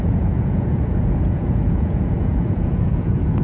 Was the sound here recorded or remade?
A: remade